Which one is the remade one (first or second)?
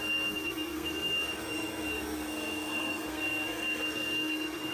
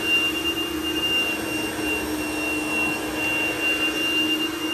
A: first